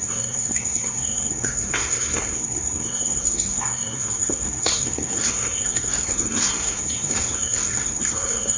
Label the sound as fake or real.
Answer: fake